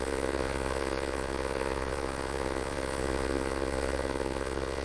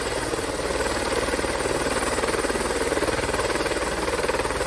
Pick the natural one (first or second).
second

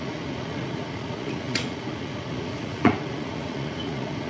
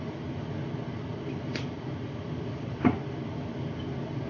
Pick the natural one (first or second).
second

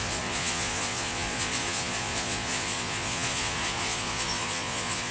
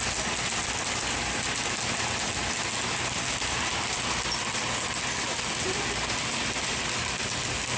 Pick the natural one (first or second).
second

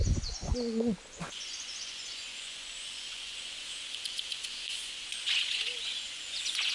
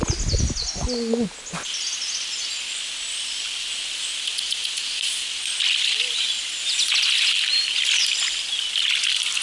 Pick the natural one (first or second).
second